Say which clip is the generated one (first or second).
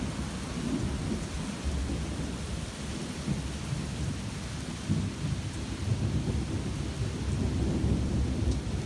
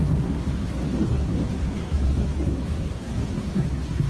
second